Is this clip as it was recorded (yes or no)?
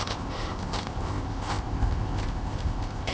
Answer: no